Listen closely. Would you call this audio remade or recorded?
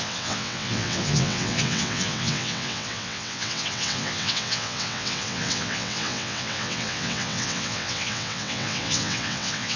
remade